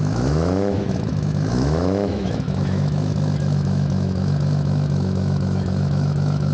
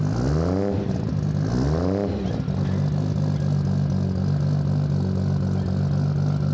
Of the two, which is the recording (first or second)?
second